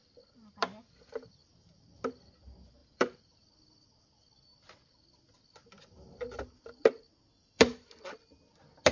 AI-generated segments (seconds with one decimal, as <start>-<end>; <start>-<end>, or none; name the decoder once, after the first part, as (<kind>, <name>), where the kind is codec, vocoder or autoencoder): 2.8-3.4 (vocoder, BigVGAN v2)